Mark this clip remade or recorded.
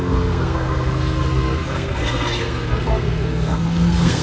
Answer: remade